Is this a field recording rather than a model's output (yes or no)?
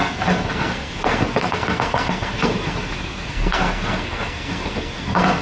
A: no